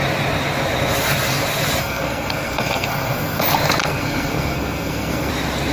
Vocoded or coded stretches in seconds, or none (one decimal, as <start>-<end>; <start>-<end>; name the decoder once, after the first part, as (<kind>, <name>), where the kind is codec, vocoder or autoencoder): 1.8-3.4 (codec, SNAC); 3.8-5.3